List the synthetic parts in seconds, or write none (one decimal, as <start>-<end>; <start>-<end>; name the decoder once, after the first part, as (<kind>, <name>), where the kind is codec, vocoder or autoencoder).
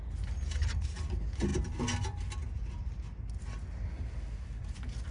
none